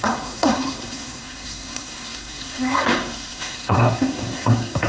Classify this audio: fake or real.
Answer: fake